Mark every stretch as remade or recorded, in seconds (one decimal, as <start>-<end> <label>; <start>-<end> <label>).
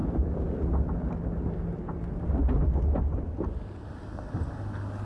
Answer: 0.0-5.0 recorded